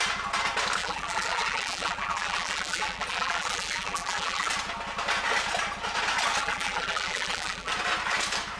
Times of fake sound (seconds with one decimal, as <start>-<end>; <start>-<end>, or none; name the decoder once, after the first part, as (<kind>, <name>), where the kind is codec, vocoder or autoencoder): 0.8-4.5 (vocoder, BigVGAN v2); 6.4-7.7

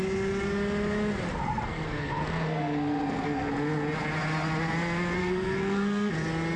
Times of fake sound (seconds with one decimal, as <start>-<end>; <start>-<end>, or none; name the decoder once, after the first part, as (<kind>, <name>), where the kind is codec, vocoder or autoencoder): 1.4-3.5 (codec, SNAC); 5.2-6.1

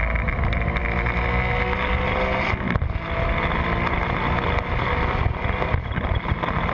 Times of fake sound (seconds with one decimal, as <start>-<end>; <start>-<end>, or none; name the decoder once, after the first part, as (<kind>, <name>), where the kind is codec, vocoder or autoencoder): none

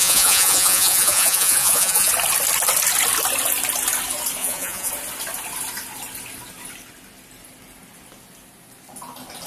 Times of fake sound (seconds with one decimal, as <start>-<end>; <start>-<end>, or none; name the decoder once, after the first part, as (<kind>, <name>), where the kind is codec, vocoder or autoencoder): 0.0-2.1 (vocoder, Vocos); 4.4-4.9

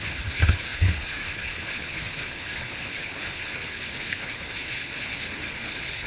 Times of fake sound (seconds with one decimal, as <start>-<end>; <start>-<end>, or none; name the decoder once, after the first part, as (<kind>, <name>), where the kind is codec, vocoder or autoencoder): 0.0-6.1 (codec, HILCodec)

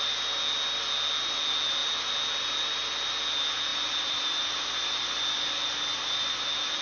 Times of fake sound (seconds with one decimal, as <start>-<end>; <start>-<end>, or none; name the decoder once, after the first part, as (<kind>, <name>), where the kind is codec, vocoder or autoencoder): 3.7-6.3 (vocoder, BigVGAN v2)

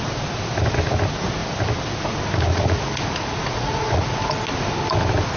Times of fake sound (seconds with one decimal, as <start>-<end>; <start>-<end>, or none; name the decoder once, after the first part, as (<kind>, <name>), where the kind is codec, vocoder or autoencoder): 2.5-4.0 (vocoder, Vocos)